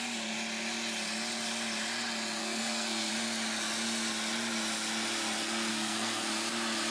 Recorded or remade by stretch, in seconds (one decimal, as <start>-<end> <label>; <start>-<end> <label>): 0.0-2.4 recorded; 2.4-3.1 remade; 3.1-5.7 recorded; 5.7-6.3 remade; 6.3-6.9 recorded